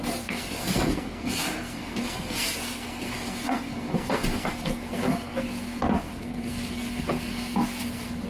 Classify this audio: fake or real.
fake